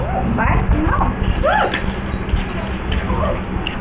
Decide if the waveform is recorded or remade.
recorded